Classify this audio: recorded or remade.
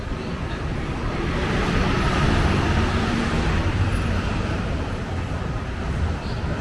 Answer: remade